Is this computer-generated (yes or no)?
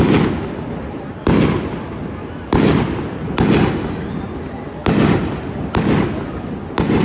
no